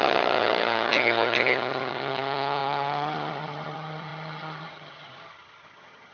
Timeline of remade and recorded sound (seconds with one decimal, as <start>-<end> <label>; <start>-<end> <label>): 0.0-6.1 remade